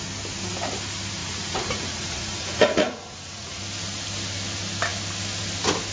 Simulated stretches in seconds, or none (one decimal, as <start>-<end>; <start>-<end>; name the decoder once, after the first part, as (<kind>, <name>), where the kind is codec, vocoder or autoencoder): 1.2-3.6 (vocoder, Vocos)